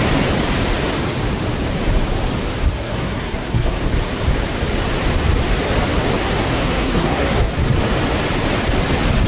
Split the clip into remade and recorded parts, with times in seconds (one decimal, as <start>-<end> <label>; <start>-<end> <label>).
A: 0.0-2.7 recorded; 2.7-3.9 remade; 3.9-6.2 recorded; 6.2-7.5 remade; 7.5-9.3 recorded